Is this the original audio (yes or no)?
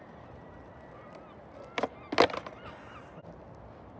yes